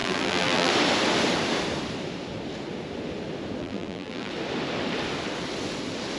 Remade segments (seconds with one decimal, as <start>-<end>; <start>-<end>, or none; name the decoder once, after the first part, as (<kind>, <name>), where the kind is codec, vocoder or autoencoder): 0.0-0.7 (vocoder, BigVGAN v2); 3.6-4.3